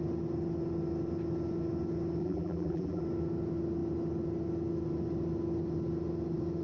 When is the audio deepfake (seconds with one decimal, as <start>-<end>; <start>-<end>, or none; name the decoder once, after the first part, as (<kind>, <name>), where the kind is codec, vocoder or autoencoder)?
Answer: 2.2-3.0 (vocoder, BigVGAN v2)